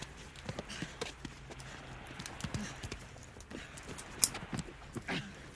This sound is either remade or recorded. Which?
recorded